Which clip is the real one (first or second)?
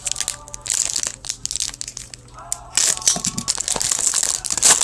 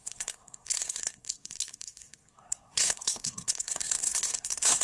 first